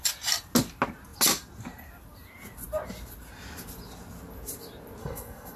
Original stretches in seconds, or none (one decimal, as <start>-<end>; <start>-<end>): 0.0-5.0